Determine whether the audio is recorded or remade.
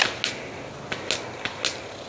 recorded